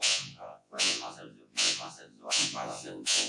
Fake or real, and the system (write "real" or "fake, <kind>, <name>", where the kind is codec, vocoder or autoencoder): fake, vocoder, Vocos